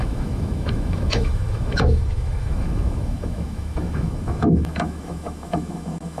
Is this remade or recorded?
remade